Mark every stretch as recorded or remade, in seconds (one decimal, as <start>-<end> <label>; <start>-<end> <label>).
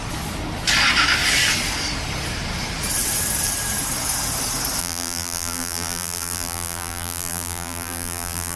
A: 0.0-4.8 recorded; 4.8-8.6 remade